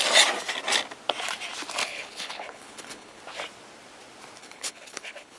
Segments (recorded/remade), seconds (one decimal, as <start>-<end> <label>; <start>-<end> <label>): 0.0-1.8 recorded; 1.8-3.2 remade; 3.2-4.4 recorded; 4.4-5.4 remade